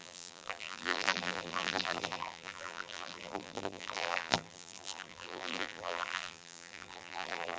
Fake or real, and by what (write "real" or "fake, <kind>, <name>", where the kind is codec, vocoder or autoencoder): fake, vocoder, BigVGAN v2